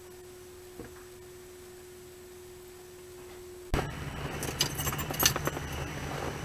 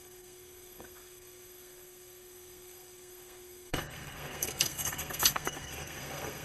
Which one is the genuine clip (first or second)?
first